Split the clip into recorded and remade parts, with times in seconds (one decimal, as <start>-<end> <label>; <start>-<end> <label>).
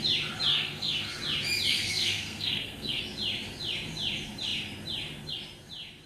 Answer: 0.0-0.5 recorded; 0.5-1.2 remade; 1.2-1.7 recorded; 1.7-3.0 remade; 3.0-6.1 recorded